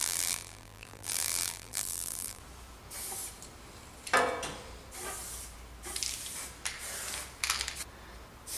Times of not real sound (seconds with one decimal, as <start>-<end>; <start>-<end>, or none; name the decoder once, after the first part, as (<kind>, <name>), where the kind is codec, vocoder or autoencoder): 0.0-2.4 (vocoder, BigVGAN v2)